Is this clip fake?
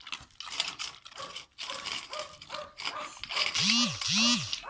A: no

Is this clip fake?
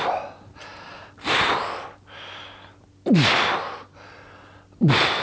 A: no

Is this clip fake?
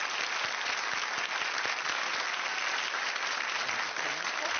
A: no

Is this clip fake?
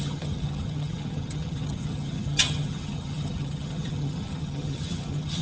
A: yes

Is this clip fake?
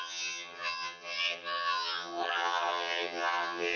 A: yes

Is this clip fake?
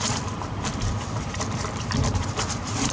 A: no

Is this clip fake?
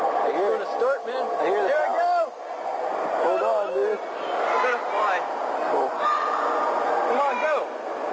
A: no